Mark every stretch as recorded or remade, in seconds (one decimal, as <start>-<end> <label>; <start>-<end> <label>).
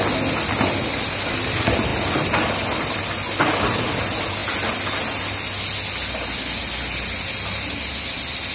0.0-8.5 recorded